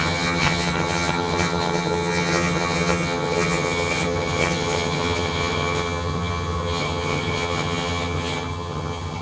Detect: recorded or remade remade